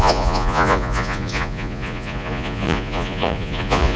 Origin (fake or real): fake